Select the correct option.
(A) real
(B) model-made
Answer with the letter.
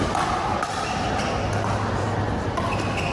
A